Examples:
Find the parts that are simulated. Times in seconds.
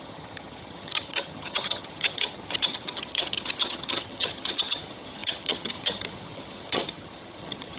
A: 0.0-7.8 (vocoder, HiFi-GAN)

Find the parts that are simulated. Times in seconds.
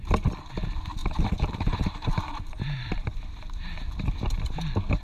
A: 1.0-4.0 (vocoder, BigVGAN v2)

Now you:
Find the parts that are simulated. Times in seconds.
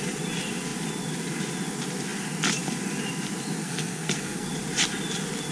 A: 3.6-4.5 (codec, SNAC)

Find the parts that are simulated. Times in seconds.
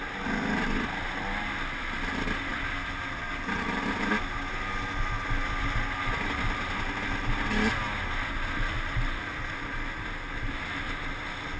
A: none